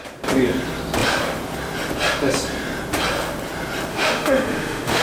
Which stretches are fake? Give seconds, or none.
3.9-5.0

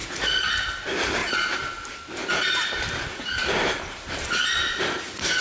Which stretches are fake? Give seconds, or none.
0.0-0.7